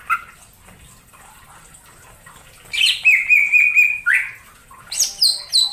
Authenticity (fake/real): real